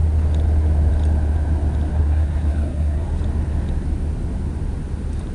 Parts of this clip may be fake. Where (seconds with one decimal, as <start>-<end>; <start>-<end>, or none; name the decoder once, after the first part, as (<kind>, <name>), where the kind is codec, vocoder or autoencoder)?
1.9-3.2 (codec, SNAC)